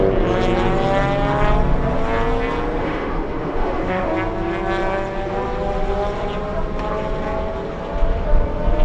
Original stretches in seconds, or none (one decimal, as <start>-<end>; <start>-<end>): 0.0-2.8; 4.1-8.8

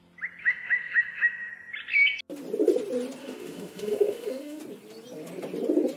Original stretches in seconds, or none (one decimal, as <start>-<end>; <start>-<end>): 0.0-0.4; 1.5-3.2; 4.6-6.0

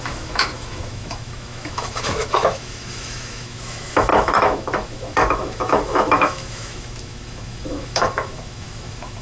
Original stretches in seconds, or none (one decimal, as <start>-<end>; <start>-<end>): none

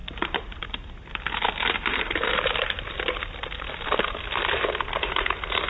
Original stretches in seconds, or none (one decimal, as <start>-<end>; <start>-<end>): 0.0-5.7

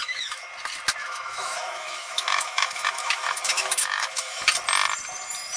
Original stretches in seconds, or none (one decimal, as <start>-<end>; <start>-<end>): 0.5-1.0; 4.4-5.6

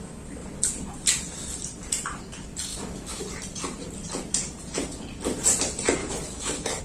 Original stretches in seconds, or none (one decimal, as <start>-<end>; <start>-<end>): 0.0-2.7; 3.2-6.0

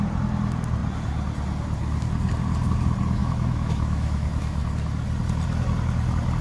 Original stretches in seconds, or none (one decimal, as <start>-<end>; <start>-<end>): 0.0-3.2; 4.6-6.4

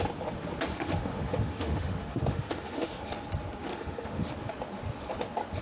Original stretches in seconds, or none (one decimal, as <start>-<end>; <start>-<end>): 0.0-0.7; 3.1-3.7; 4.3-5.6